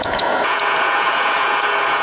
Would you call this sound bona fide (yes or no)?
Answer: no